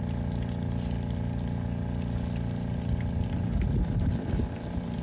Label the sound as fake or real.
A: real